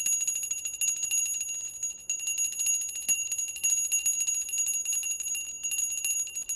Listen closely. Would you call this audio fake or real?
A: real